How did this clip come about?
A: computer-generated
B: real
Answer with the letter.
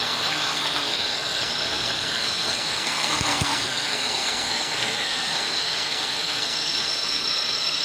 A